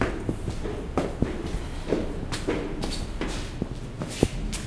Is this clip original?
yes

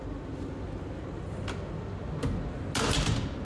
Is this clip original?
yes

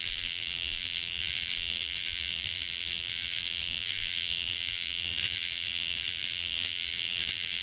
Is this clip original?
no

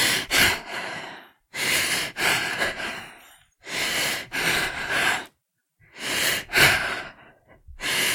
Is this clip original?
no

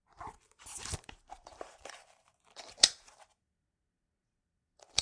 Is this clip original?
no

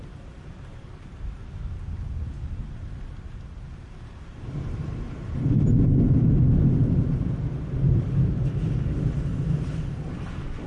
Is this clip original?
no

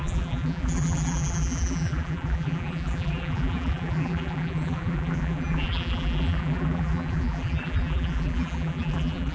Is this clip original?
no